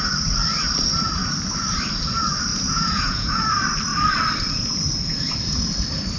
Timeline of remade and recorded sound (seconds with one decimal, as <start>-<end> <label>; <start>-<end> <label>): 0.0-2.5 recorded; 2.5-3.5 remade; 3.5-6.2 recorded